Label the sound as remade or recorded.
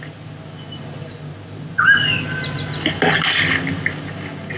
recorded